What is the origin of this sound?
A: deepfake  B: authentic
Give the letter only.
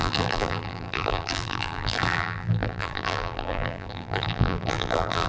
A